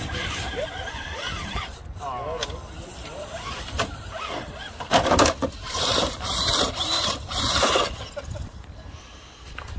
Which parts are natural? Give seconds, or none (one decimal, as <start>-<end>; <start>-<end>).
0.0-3.0; 7.0-9.8